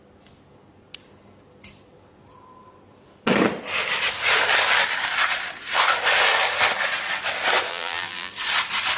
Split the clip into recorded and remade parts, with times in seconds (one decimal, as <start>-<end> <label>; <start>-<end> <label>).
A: 0.0-7.7 recorded; 7.7-8.3 remade; 8.3-9.0 recorded